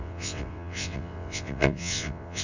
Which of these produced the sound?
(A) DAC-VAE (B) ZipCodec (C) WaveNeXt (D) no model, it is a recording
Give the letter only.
C